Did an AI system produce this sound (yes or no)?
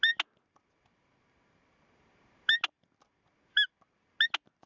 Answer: no